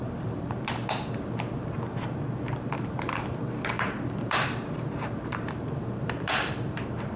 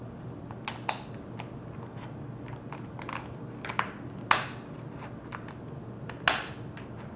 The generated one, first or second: first